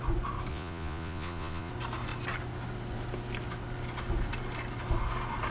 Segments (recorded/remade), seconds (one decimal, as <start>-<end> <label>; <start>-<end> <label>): 0.0-0.5 recorded; 0.5-1.7 remade; 1.7-5.5 recorded